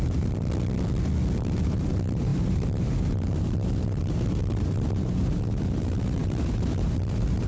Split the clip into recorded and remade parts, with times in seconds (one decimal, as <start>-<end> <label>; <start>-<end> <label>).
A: 0.0-0.4 remade; 0.4-1.4 recorded; 1.4-7.5 remade